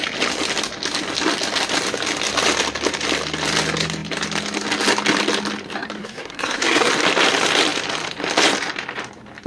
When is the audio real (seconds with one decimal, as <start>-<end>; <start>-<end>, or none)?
0.0-6.0; 6.9-9.5